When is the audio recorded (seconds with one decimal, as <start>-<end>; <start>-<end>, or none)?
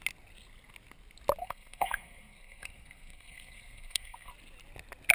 0.0-1.4; 4.3-5.1